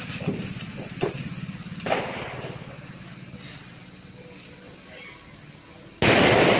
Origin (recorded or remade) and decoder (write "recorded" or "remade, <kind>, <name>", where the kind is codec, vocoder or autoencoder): recorded